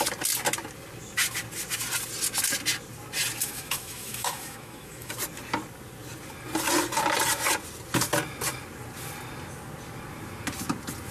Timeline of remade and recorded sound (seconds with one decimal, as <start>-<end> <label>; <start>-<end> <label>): 0.0-3.4 recorded; 3.4-5.1 remade; 5.1-11.1 recorded